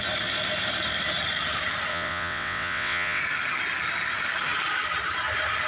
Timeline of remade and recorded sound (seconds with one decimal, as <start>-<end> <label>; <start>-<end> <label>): 0.0-1.9 recorded; 1.9-3.2 remade; 3.2-5.7 recorded